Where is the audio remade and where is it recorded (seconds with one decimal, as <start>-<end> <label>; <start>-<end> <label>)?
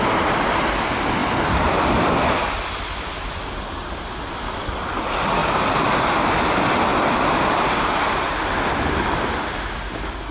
0.0-10.3 recorded